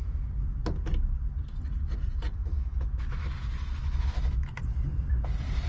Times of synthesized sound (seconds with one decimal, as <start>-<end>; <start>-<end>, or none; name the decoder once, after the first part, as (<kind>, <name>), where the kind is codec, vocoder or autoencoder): 2.4-3.0 (autoencoder, DAC-VAE); 3.8-4.6